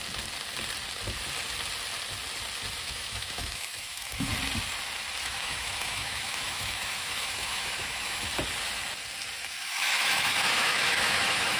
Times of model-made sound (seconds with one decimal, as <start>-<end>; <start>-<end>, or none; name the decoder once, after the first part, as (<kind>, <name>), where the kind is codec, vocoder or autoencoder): 2.8-4.3 (autoencoder, DAC-VAE); 5.2-8.3; 9.4-11.6